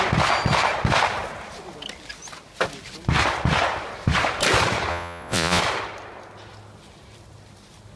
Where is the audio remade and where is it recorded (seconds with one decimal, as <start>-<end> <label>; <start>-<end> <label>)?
0.0-4.9 recorded; 4.9-5.6 remade; 5.6-8.0 recorded